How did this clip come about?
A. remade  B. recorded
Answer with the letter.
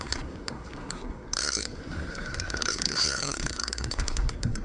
A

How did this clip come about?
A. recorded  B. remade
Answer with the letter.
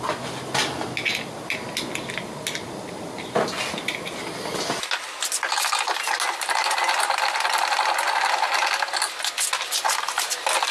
A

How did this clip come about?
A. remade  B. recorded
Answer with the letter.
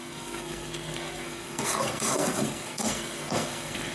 A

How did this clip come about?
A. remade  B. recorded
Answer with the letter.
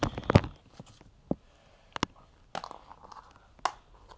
B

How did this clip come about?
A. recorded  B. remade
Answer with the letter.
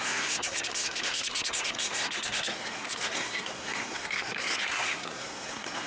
B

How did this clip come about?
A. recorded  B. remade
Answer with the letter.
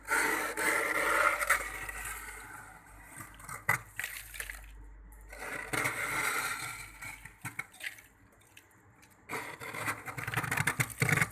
A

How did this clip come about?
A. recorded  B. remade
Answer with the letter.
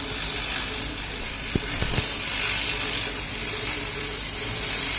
A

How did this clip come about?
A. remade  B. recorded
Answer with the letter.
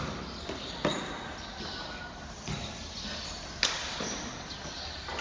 B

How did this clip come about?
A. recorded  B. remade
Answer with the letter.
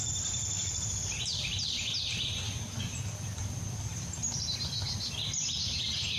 A